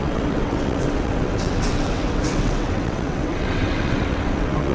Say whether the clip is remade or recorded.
remade